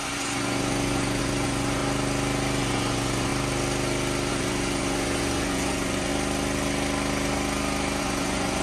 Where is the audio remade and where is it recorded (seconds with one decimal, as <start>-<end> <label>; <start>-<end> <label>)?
0.0-1.8 remade; 1.8-2.6 recorded; 2.6-3.3 remade; 3.3-4.3 recorded; 4.3-6.1 remade; 6.1-8.0 recorded; 8.0-8.6 remade